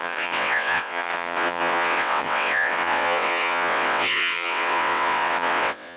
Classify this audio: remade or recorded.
remade